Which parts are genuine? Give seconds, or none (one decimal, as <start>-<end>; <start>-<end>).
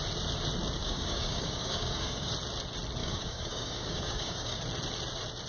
0.0-0.8; 2.3-3.0; 4.6-5.5